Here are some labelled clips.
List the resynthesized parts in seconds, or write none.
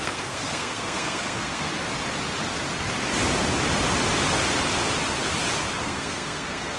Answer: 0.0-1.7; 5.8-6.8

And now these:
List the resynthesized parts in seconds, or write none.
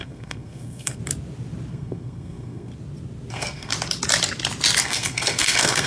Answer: 0.0-1.0; 1.7-2.7; 3.3-3.7; 4.8-5.9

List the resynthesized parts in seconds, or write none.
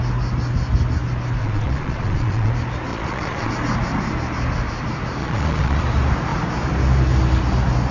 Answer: 1.4-2.5; 2.9-3.5; 5.2-5.8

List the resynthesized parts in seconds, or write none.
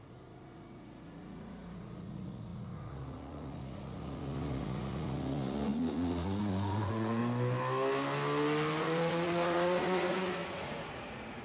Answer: 0.0-7.2; 8.8-11.4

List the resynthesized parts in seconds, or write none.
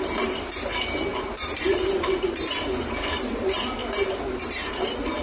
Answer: 0.0-3.8; 4.4-5.2